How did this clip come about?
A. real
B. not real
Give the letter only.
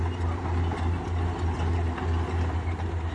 A